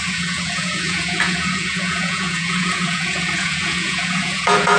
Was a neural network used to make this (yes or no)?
yes